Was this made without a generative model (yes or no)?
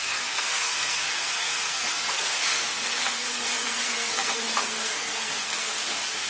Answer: no